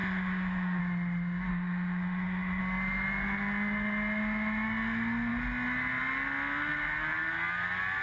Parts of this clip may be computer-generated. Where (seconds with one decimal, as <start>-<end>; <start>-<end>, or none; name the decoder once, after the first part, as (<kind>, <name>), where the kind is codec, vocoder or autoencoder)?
0.0-0.8 (autoencoder, DAC-VAE); 1.5-2.6